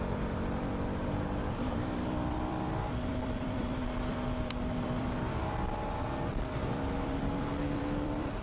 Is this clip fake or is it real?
fake